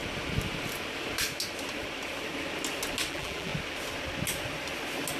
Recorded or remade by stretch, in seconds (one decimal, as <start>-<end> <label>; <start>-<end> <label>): 0.0-3.1 recorded; 3.1-3.5 remade; 3.5-5.2 recorded